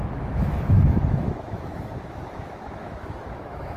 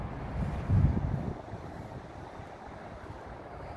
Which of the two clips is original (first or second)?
second